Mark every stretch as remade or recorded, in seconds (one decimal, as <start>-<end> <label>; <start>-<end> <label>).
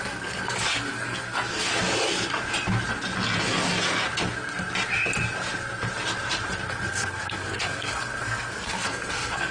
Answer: 0.0-1.7 remade; 1.7-6.7 recorded; 6.7-9.5 remade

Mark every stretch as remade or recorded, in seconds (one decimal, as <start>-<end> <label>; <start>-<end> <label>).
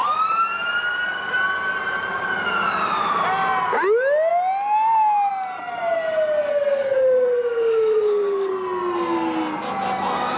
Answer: 0.0-6.5 recorded; 6.5-8.5 remade; 8.5-10.4 recorded